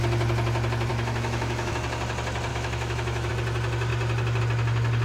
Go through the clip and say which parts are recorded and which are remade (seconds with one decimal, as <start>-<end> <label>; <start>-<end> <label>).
0.0-0.9 recorded; 0.9-1.7 remade; 1.7-2.5 recorded; 2.5-3.3 remade; 3.3-5.0 recorded